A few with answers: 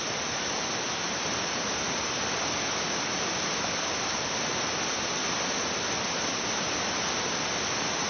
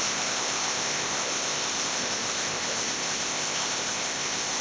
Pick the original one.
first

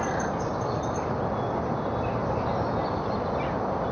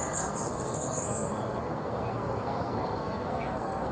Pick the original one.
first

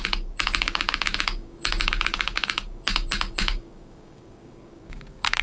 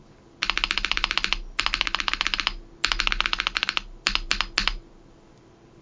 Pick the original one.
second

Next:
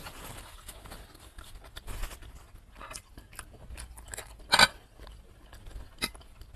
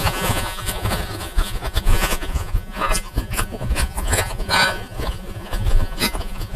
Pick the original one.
first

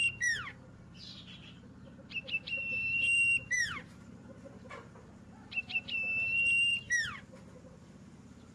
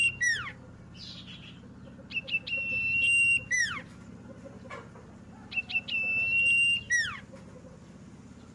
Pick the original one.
second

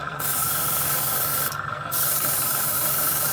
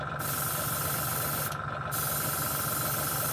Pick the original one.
second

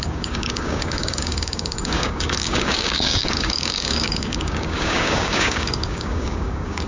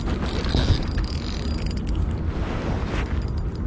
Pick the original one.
second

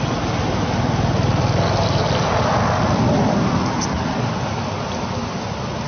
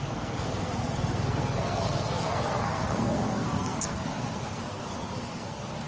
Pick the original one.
first